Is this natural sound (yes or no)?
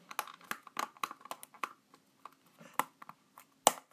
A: yes